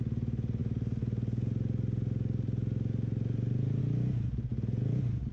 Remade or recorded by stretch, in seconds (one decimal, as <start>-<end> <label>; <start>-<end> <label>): 0.0-5.3 recorded